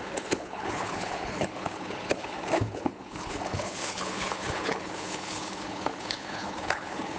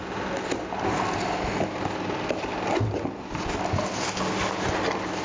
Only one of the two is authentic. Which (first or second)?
second